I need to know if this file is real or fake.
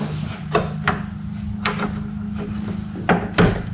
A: real